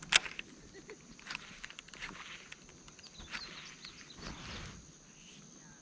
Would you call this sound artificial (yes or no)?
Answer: no